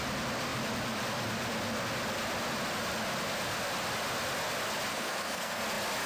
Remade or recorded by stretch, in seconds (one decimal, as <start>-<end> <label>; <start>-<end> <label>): 0.0-4.9 recorded; 4.9-5.6 remade; 5.6-6.1 recorded